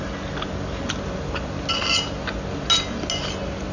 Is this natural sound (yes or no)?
yes